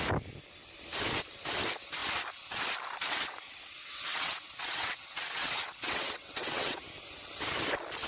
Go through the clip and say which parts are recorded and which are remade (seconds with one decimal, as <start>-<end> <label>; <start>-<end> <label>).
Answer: 0.0-3.0 recorded; 3.0-6.8 remade; 6.8-8.1 recorded